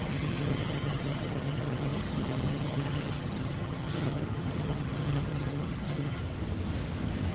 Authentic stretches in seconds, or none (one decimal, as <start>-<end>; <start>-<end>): 6.2-7.3